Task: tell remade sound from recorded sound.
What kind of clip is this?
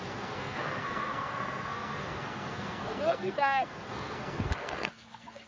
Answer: remade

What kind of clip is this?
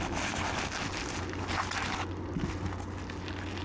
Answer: recorded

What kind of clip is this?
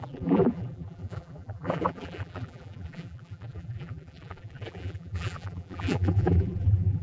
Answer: remade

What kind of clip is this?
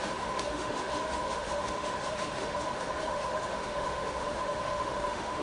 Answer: remade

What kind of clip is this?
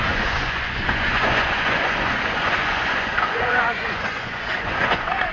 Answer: remade